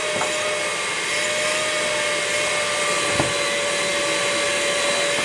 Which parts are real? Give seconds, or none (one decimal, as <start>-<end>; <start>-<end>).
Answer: 0.0-5.2